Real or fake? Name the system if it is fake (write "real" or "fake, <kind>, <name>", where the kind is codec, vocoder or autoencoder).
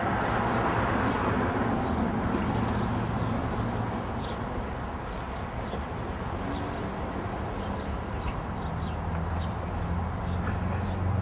real